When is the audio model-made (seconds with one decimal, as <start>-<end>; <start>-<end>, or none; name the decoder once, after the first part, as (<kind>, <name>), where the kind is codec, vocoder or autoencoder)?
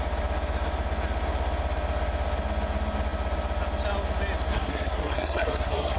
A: 4.5-6.0 (codec, SNAC)